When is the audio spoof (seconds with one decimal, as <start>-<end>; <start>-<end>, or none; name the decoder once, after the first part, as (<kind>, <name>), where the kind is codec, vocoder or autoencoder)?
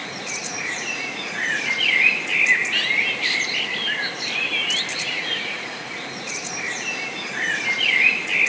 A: 0.0-1.7 (vocoder, Vocos); 4.9-6.5